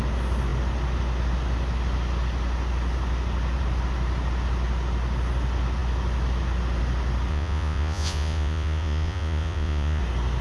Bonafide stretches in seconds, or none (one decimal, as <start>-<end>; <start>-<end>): 0.0-7.3; 10.0-10.4